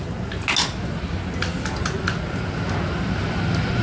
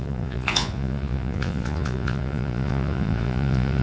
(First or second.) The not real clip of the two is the second